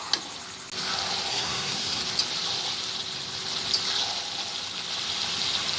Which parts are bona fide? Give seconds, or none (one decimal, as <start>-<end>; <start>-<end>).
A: 0.0-1.3; 2.0-5.8